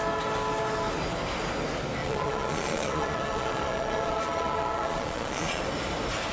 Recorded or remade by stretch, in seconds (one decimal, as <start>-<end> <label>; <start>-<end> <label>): 0.0-2.0 recorded; 2.0-5.6 remade; 5.6-6.3 recorded